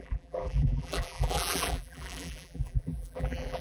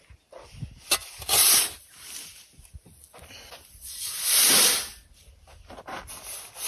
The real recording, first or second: second